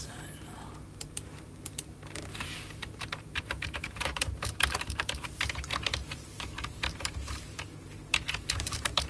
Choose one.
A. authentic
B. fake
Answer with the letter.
B